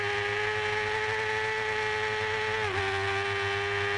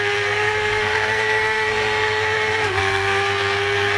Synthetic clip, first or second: second